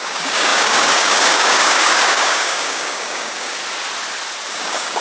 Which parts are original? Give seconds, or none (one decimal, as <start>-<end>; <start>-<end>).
3.6-4.5